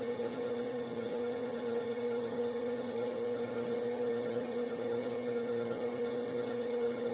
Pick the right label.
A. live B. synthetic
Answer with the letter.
B